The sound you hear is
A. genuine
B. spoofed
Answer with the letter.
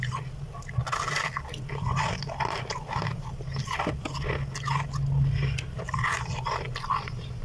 A